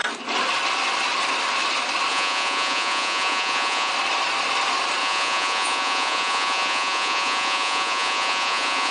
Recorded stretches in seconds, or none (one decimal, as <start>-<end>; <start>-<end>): 0.0-2.1; 3.9-5.0